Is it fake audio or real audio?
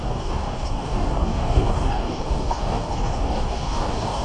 fake